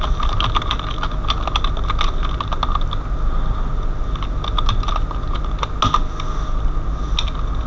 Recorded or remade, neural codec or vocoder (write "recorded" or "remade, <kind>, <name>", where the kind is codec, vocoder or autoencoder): recorded